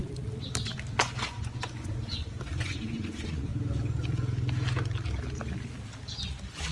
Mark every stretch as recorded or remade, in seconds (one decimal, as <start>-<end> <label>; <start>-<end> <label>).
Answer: 0.0-1.0 recorded; 1.0-3.5 remade; 3.5-6.7 recorded